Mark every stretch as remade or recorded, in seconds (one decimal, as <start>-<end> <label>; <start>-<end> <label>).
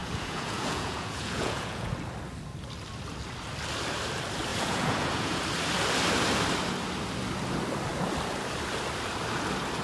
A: 0.0-1.9 remade; 1.9-4.5 recorded; 4.5-5.4 remade; 5.4-9.8 recorded